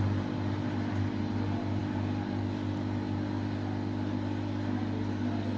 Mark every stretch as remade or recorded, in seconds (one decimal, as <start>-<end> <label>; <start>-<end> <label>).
0.0-5.6 recorded